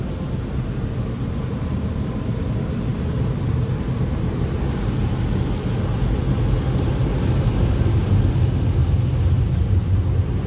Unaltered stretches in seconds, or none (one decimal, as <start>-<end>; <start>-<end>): 0.0-10.5